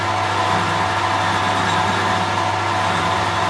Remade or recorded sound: recorded